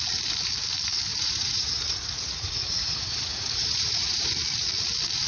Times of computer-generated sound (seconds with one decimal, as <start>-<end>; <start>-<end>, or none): 1.1-4.3